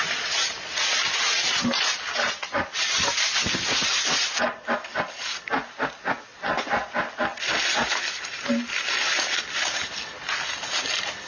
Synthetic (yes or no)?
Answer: no